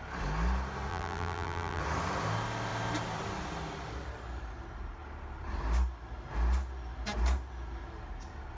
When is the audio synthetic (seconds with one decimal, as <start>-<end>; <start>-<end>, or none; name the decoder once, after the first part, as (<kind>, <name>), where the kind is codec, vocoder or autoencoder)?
0.9-1.8 (vocoder, BigVGAN v2)

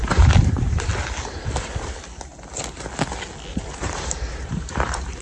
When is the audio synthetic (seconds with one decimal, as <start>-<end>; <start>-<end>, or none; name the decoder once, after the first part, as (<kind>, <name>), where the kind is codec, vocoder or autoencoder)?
0.0-0.9 (vocoder, BigVGAN v2); 3.5-5.2

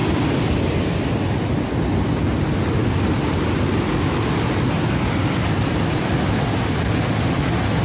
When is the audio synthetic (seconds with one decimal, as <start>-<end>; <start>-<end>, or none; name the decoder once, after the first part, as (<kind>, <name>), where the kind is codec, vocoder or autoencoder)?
none

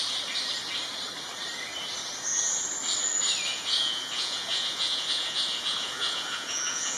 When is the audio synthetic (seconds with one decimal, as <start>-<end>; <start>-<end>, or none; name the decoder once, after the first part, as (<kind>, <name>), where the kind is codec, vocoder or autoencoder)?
3.5-7.0 (vocoder, Vocos)

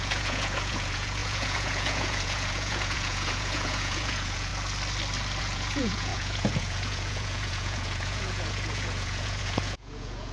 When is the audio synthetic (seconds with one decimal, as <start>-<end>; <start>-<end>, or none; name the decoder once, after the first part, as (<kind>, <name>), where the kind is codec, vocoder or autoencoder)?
0.0-4.5 (vocoder, Vocos); 5.4-10.3

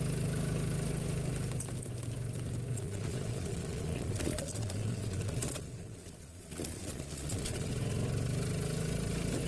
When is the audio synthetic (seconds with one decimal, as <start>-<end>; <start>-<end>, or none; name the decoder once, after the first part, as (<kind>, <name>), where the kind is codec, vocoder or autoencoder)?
2.7-7.7 (vocoder, Vocos)

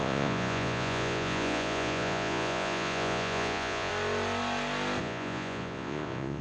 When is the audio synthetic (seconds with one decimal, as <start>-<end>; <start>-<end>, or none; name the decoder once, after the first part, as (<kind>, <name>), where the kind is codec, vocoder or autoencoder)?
0.0-3.9 (vocoder, Vocos); 5.0-6.4

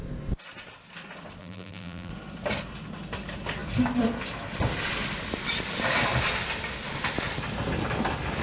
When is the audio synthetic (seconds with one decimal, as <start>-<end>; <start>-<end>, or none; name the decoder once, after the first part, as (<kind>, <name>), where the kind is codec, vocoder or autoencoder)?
1.4-2.1 (vocoder, BigVGAN v2)